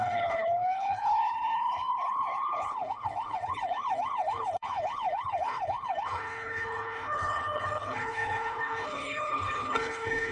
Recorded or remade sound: remade